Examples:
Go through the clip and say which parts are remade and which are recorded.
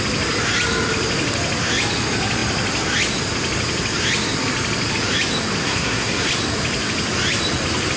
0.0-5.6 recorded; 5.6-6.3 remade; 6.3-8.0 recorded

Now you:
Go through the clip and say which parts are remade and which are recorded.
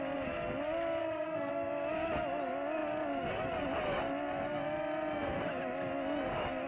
0.0-1.0 recorded; 1.0-1.5 remade; 1.5-6.7 recorded